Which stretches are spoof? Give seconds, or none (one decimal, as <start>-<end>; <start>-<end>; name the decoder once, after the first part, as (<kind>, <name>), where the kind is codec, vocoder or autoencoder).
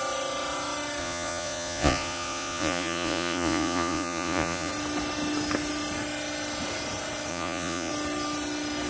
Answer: 1.0-4.7 (vocoder, Vocos); 7.3-7.9